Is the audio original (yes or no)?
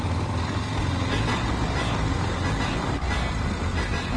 yes